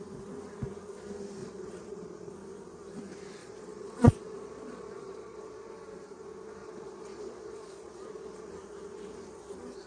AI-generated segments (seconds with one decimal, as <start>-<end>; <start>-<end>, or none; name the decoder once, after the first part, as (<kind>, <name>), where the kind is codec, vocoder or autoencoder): 1.4-2.3 (vocoder, Vocos); 3.4-5.7; 6.6-8.5